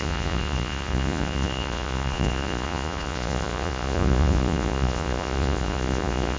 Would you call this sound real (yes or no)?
no